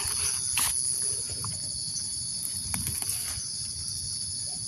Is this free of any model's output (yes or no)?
yes